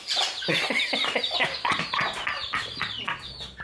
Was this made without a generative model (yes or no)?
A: yes